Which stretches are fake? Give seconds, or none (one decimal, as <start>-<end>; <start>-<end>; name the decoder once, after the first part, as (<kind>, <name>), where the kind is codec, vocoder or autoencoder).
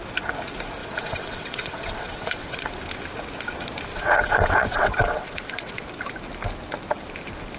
0.8-2.7 (vocoder, WaveNeXt); 3.9-5.8